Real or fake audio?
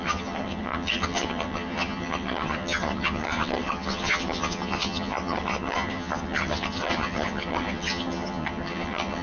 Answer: fake